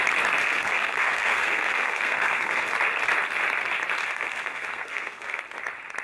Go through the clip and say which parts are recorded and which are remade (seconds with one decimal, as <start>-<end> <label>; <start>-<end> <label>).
0.0-0.4 recorded; 0.4-2.7 remade; 2.7-4.0 recorded; 4.0-5.4 remade; 5.4-6.0 recorded